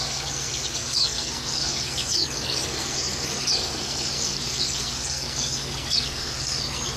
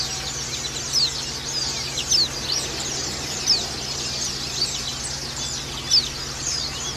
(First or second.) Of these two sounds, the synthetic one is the first